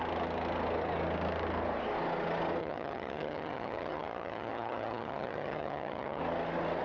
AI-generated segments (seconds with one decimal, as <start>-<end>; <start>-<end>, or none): 2.6-6.2